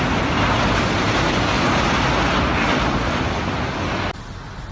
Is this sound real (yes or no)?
yes